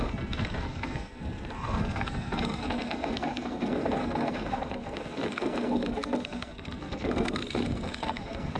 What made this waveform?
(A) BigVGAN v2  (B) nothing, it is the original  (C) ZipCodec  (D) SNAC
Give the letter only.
D